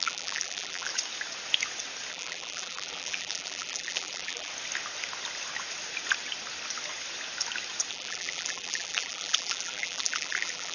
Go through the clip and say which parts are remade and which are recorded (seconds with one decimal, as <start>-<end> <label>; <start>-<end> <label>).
0.0-0.9 remade; 0.9-2.1 recorded; 2.1-4.5 remade; 4.5-7.9 recorded; 7.9-10.7 remade